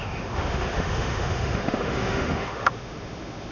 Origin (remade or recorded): remade